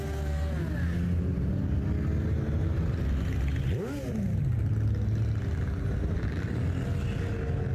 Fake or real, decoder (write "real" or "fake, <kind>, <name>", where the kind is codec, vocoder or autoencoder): real